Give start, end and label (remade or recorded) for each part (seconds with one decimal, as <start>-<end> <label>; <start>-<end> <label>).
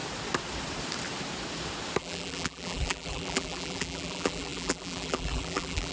0.0-2.0 recorded; 2.0-5.9 remade